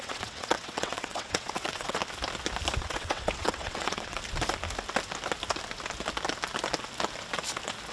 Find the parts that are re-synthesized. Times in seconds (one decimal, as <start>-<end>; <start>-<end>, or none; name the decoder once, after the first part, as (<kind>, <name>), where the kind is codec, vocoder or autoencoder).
0.0-2.0 (vocoder, WaveNeXt); 2.8-4.2